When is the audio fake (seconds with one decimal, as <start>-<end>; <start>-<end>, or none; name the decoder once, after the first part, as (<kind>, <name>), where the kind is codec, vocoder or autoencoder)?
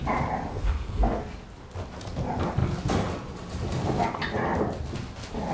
0.5-1.2 (codec, SNAC)